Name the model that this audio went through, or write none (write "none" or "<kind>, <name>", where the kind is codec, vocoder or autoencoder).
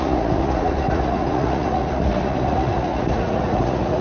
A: vocoder, Vocos